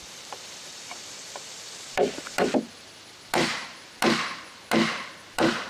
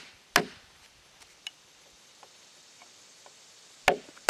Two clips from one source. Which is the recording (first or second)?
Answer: second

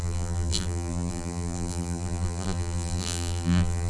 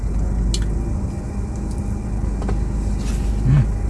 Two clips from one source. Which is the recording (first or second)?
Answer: second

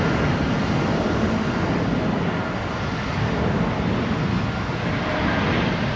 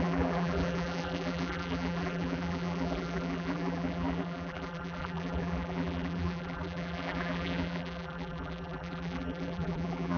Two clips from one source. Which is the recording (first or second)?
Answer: first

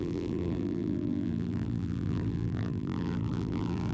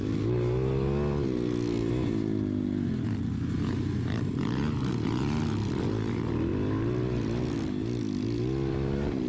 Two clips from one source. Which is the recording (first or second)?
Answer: second